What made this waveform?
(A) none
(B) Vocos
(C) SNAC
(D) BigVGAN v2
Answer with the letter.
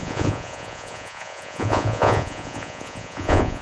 B